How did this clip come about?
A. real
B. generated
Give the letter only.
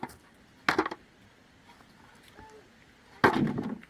A